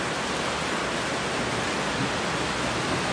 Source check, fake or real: real